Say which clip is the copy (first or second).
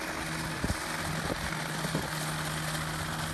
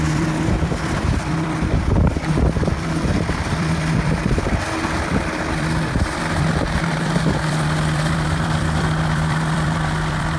second